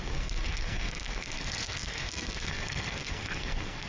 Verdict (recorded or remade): remade